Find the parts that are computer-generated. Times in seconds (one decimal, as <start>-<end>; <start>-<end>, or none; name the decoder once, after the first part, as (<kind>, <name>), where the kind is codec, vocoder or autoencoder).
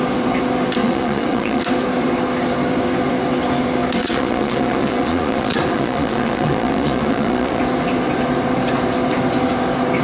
0.8-1.6 (vocoder, Vocos); 4.0-7.6